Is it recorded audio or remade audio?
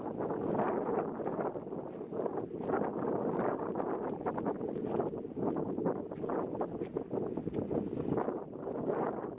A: recorded